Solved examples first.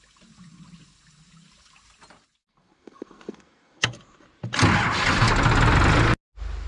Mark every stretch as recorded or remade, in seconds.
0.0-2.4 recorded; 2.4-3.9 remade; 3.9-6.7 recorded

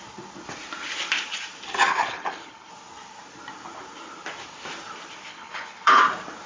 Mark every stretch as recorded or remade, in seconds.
0.0-1.9 recorded; 1.9-2.7 remade; 2.7-5.3 recorded; 5.3-6.0 remade; 6.0-6.5 recorded

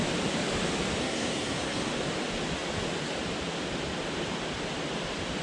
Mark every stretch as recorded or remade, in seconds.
0.0-1.0 recorded; 1.0-1.9 remade; 1.9-5.4 recorded

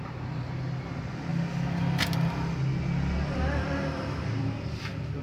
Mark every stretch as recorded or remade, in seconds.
0.0-5.2 recorded